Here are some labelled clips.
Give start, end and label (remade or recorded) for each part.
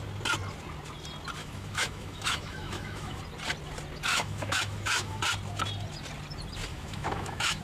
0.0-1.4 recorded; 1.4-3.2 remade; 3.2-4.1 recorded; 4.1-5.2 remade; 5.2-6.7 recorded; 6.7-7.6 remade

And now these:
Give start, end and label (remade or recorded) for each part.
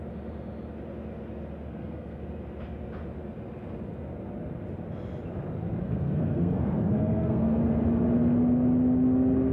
0.0-1.7 recorded; 1.7-2.2 remade; 2.2-5.8 recorded; 5.8-7.6 remade; 7.6-9.5 recorded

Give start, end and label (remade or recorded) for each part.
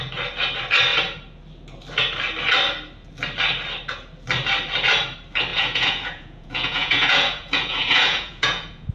0.0-5.5 recorded; 5.5-8.9 remade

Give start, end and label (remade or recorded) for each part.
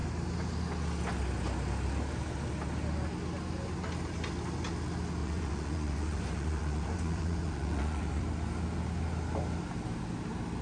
0.0-5.2 recorded; 5.2-8.2 remade; 8.2-10.6 recorded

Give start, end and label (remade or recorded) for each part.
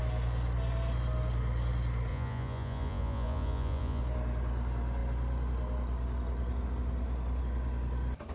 0.0-2.1 recorded; 2.1-4.0 remade; 4.0-8.3 recorded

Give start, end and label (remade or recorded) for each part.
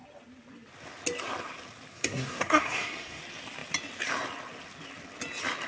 0.0-1.9 recorded; 1.9-3.2 remade; 3.2-5.7 recorded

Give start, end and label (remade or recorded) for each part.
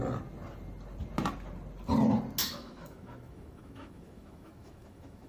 0.0-2.4 recorded; 2.4-5.3 remade